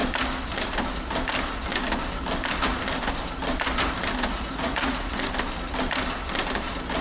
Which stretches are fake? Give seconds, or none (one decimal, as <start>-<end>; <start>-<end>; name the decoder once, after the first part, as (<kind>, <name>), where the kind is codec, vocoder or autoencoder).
4.3-5.1 (vocoder, Vocos)